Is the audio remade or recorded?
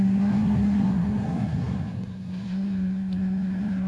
remade